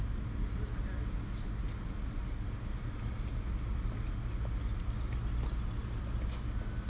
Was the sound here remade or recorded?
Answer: recorded